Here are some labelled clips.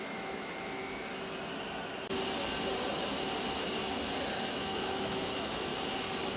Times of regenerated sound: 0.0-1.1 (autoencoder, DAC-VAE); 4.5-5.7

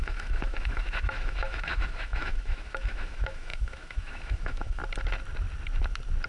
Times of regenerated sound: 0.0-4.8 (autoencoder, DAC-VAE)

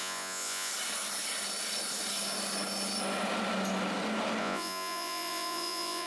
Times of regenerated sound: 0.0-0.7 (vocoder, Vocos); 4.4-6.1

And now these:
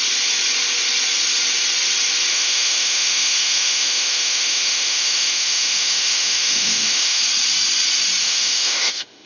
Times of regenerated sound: 2.3-7.2 (autoencoder, DAC-VAE); 8.2-9.3

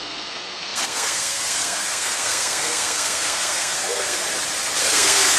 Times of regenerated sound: 0.0-4.2 (codec, SNAC); 4.8-5.4

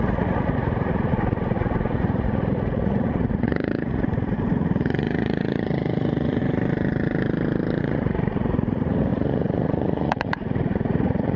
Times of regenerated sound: 0.0-6.4 (vocoder, Vocos); 7.8-11.4

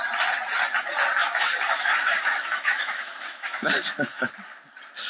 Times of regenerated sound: 1.2-4.3 (autoencoder, DAC-VAE)